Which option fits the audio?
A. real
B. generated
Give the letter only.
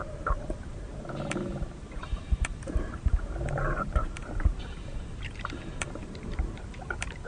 B